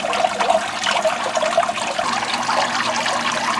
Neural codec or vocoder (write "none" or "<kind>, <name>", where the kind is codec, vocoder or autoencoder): none